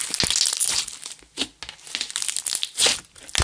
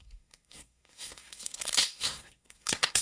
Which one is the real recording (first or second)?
first